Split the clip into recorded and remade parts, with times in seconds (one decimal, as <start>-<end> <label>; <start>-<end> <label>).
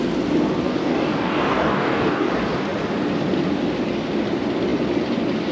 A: 0.0-0.8 recorded; 0.8-2.3 remade; 2.3-5.5 recorded